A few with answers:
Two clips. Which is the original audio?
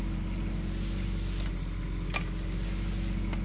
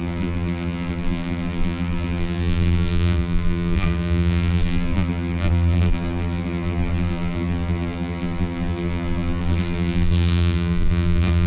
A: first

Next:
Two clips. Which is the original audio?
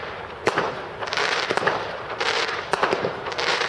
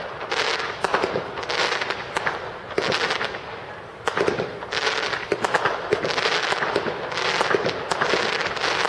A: second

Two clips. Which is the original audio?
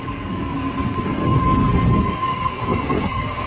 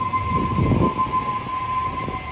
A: second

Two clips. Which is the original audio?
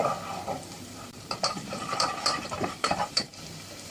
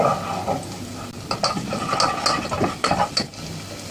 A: second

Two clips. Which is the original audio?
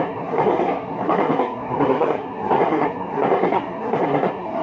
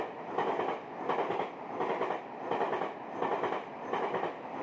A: second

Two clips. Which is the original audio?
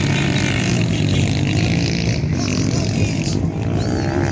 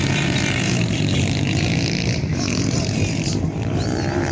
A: first